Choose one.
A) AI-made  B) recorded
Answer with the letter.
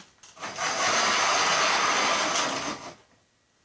B